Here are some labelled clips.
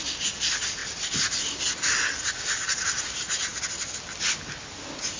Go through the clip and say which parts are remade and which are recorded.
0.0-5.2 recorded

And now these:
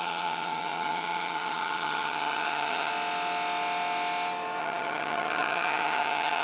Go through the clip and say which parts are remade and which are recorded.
0.0-2.9 remade; 2.9-4.6 recorded; 4.6-6.4 remade

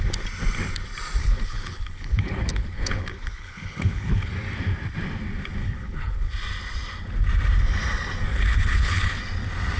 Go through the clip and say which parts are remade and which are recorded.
0.0-1.2 recorded; 1.2-4.3 remade; 4.3-5.6 recorded; 5.6-6.3 remade; 6.3-8.3 recorded; 8.3-9.2 remade; 9.2-9.8 recorded